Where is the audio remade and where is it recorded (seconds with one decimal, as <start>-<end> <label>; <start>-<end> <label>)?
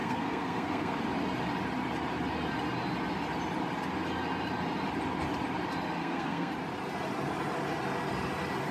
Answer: 0.0-1.0 remade; 1.0-6.0 recorded; 6.0-6.5 remade; 6.5-8.7 recorded